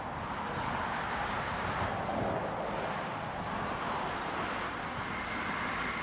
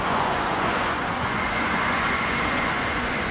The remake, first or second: second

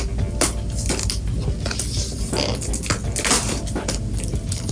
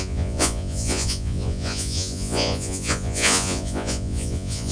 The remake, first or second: second